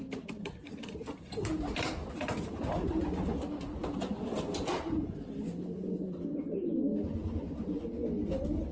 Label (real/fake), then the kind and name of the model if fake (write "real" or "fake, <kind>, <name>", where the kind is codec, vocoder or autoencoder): real